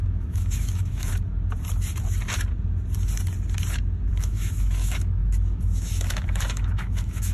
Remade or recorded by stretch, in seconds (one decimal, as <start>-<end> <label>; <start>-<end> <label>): 0.0-1.1 remade; 1.1-4.1 recorded; 4.1-7.3 remade